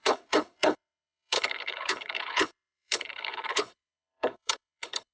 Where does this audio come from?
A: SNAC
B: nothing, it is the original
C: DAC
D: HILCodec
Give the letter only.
D